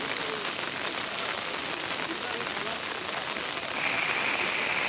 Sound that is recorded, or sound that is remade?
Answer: recorded